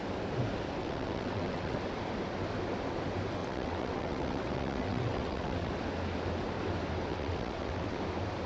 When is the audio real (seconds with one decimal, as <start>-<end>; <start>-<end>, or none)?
0.0-0.8; 1.8-3.4; 5.7-7.1; 8.0-8.5